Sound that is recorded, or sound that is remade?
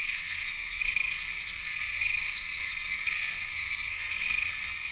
remade